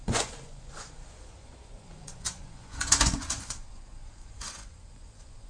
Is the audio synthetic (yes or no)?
yes